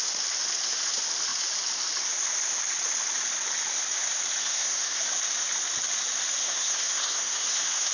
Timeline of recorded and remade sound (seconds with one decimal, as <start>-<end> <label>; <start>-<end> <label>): 0.0-4.4 recorded; 4.4-5.0 remade; 5.0-6.4 recorded; 6.4-7.9 remade